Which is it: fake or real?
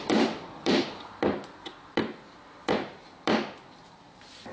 fake